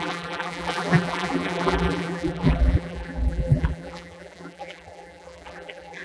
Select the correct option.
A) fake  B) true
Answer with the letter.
A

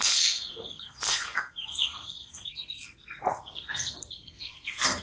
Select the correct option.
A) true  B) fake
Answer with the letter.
B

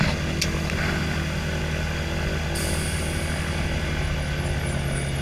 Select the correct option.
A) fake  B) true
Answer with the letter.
B